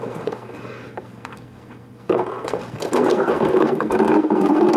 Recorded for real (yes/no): no